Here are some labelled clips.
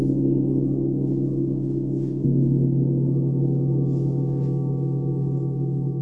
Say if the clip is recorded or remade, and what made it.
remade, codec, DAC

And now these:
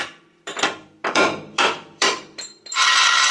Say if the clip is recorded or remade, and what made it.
remade, vocoder, BigVGAN v2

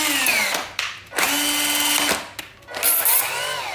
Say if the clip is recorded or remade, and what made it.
recorded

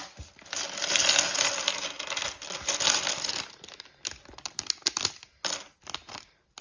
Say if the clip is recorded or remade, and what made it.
recorded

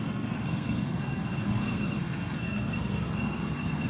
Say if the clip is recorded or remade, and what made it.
remade, codec, SNAC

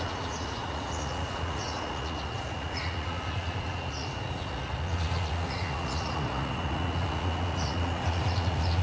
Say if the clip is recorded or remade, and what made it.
remade, vocoder, Vocos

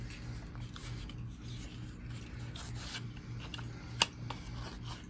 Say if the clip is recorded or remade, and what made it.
recorded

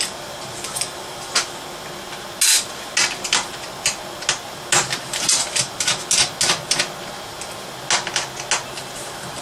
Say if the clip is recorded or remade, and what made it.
recorded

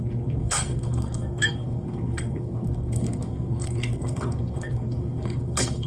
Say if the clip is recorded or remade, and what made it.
remade, codec, SNAC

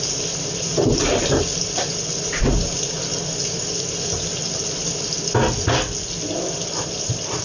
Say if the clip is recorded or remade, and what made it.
recorded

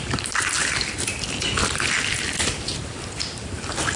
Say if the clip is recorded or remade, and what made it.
recorded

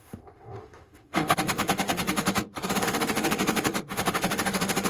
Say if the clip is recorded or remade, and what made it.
remade, autoencoder, DAC-VAE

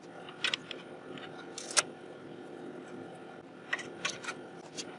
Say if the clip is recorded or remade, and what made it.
recorded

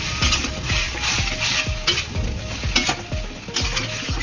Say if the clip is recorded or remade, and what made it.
recorded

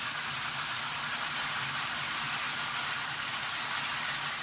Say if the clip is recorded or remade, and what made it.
recorded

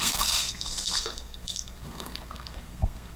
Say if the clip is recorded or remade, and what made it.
remade, codec, SNAC